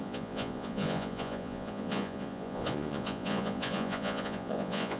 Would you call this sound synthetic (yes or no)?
yes